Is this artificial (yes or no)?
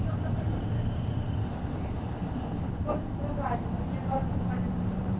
yes